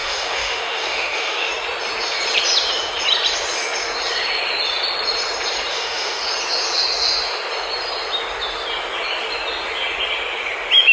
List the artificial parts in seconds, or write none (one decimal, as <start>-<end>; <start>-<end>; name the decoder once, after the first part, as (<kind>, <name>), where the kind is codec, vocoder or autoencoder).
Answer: 0.0-1.5 (autoencoder, DAC-VAE); 5.7-6.2